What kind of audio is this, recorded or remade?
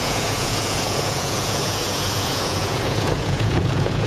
remade